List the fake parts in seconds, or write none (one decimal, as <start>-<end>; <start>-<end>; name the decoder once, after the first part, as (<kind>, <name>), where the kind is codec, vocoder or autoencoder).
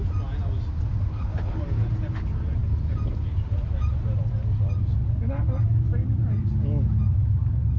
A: 1.1-1.6 (codec, HILCodec)